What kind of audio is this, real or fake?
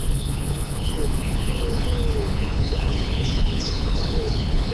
fake